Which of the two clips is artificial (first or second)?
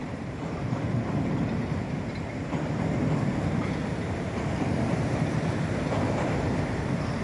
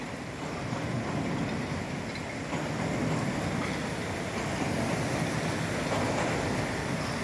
first